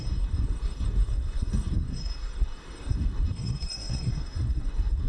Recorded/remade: remade